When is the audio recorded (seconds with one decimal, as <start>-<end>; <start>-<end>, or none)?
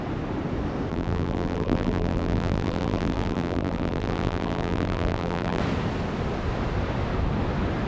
0.0-0.9; 5.6-7.9